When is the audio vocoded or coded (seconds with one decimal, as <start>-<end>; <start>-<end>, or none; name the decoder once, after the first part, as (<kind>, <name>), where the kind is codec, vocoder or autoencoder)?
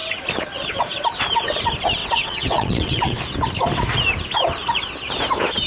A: 2.0-3.2 (vocoder, WaveNeXt)